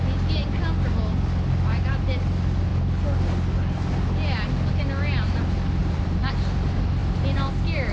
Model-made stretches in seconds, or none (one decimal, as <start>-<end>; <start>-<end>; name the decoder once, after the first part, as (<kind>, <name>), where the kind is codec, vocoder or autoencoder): 5.8-6.3 (vocoder, BigVGAN v2)